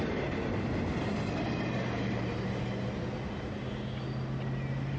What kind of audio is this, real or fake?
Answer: real